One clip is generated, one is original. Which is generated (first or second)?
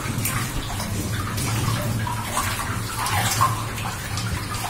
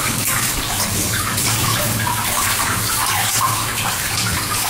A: second